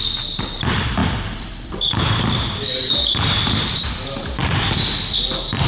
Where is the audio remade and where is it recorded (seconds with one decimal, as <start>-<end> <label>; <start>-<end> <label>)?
0.0-1.0 recorded; 1.0-2.9 remade; 2.9-4.4 recorded; 4.4-4.9 remade; 4.9-5.7 recorded